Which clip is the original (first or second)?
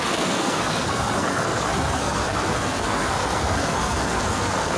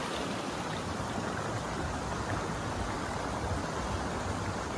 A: second